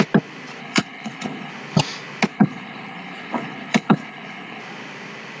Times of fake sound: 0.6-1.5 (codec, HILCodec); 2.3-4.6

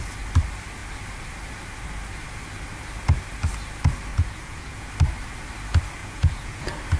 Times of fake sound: 4.1-4.9 (vocoder, Vocos); 6.0-6.6

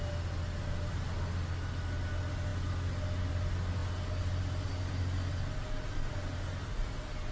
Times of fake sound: none